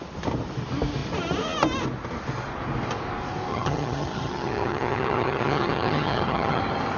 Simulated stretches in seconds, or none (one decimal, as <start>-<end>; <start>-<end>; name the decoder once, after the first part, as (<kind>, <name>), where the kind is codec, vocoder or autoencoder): 3.5-6.6 (vocoder, HiFi-GAN)